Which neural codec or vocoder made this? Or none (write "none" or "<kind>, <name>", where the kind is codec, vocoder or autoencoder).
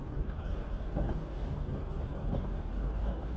codec, DAC